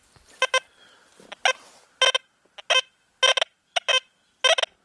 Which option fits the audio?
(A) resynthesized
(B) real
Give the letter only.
B